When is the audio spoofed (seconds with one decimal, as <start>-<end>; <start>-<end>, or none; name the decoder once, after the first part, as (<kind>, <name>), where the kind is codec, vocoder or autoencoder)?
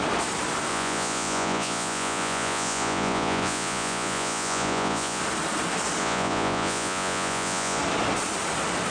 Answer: 0.7-5.2 (vocoder, Vocos); 6.0-7.8